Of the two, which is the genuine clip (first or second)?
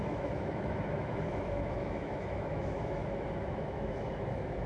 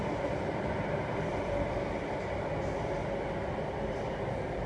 second